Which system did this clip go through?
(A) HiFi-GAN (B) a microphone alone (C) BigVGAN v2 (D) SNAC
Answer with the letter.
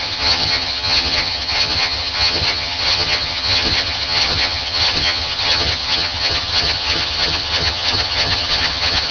A